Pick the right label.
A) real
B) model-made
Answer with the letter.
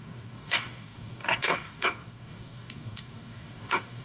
B